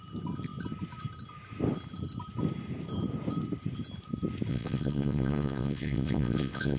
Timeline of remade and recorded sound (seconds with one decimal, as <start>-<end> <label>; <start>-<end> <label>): 0.0-4.5 recorded; 4.5-6.8 remade